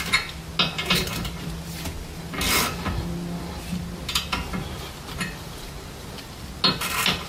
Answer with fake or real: real